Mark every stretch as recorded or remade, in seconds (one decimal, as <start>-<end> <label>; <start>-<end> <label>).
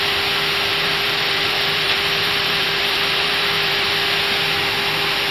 0.0-0.7 recorded; 0.7-3.9 remade; 3.9-5.3 recorded